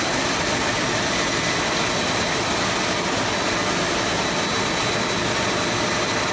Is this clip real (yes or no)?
yes